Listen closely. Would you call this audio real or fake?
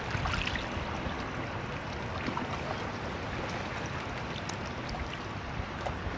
real